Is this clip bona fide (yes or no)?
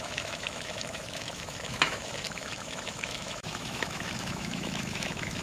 no